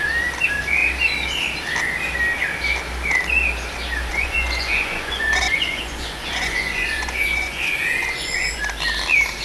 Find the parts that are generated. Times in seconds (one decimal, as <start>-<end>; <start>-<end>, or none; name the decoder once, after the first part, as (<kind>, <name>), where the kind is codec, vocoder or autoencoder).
4.1-8.6 (vocoder, Vocos)